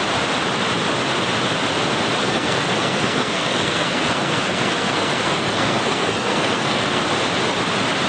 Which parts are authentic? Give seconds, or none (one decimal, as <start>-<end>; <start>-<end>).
0.0-2.2; 7.0-8.1